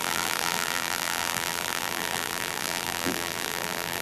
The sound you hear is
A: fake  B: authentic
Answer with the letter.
A